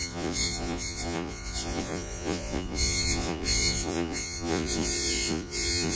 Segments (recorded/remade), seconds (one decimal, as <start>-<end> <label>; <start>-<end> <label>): 0.0-6.0 remade

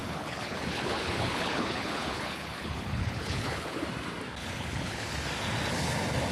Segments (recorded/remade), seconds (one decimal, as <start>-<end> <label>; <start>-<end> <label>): 0.0-3.8 remade; 3.8-4.4 recorded; 4.4-5.1 remade; 5.1-6.3 recorded

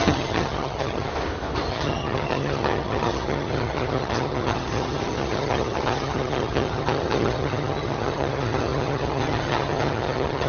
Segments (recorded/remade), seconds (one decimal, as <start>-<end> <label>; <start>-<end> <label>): 0.0-1.1 remade; 1.1-1.7 recorded; 1.7-10.5 remade

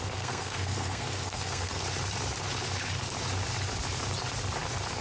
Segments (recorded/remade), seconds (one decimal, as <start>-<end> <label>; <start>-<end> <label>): 0.0-1.8 remade; 1.8-5.0 recorded

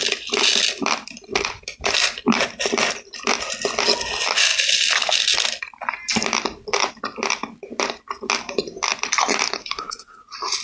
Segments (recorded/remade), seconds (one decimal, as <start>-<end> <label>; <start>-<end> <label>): 0.0-9.6 recorded; 9.6-10.2 remade; 10.2-10.6 recorded

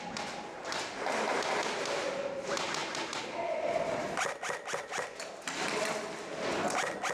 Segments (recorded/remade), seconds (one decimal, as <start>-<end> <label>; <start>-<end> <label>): 0.0-7.1 recorded